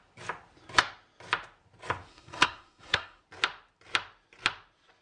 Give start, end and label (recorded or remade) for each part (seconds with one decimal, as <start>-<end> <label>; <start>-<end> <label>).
0.0-2.1 recorded; 2.1-3.2 remade; 3.2-5.0 recorded